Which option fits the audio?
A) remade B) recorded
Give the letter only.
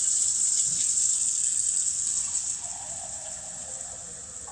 B